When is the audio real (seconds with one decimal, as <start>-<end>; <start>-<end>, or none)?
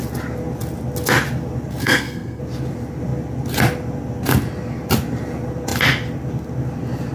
0.0-1.8; 2.4-7.1